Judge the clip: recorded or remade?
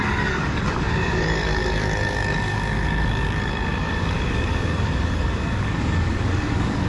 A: remade